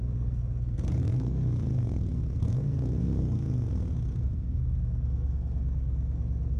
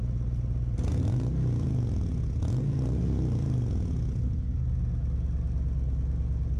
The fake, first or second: first